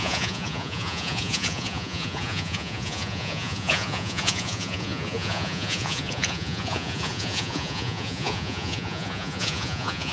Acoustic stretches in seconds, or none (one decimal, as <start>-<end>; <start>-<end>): none